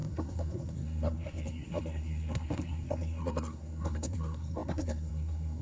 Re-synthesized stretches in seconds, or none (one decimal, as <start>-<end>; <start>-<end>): 0.0-5.6